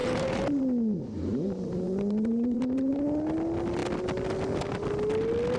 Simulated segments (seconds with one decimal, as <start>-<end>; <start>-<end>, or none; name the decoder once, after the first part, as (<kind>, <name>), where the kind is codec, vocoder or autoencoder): 0.0-0.6 (vocoder, BigVGAN v2); 1.3-2.9